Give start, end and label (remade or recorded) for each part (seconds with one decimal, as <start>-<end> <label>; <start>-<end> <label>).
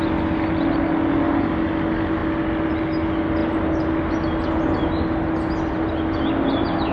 0.0-6.9 recorded